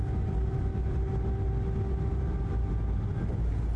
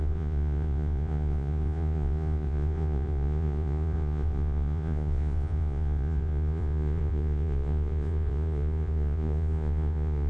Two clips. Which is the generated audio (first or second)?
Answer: second